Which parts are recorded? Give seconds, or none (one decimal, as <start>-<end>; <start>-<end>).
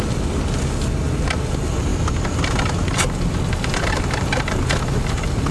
0.0-5.5